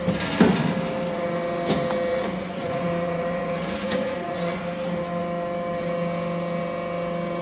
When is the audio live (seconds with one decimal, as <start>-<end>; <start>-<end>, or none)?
0.0-2.1; 4.6-7.4